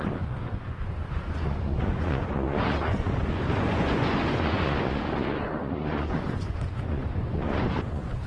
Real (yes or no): no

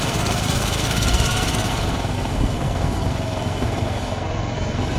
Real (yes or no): no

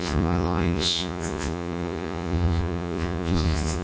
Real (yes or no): no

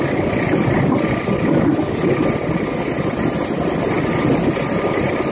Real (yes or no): yes